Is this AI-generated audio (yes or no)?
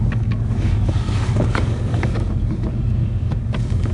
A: yes